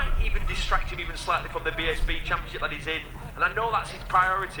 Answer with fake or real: real